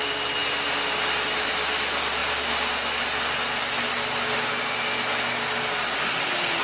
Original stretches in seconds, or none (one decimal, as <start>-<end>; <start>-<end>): 0.0-6.6